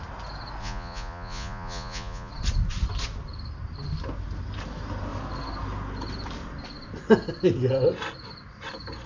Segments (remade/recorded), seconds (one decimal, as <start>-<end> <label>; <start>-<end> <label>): 0.0-0.6 recorded; 0.6-2.3 remade; 2.3-9.1 recorded